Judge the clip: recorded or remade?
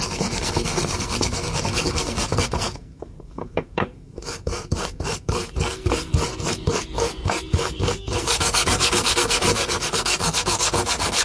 remade